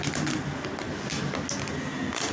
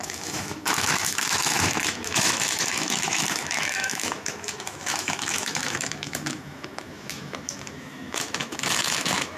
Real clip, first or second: first